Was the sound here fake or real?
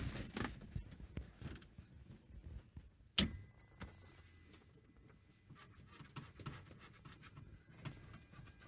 real